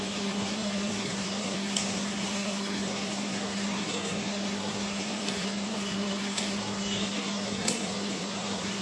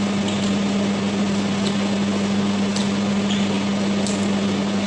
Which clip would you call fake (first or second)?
first